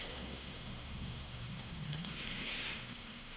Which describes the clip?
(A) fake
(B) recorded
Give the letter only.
A